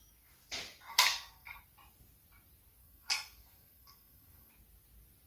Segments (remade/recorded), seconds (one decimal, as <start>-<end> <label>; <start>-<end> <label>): 0.0-0.9 recorded; 0.9-1.6 remade; 1.6-2.8 recorded; 2.8-4.5 remade; 4.5-5.3 recorded